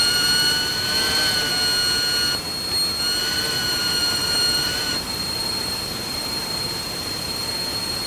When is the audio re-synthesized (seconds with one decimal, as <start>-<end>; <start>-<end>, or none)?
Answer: 0.0-1.5; 3.2-8.1